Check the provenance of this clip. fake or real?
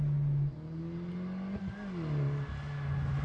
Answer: real